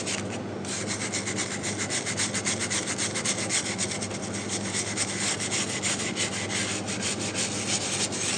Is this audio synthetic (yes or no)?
no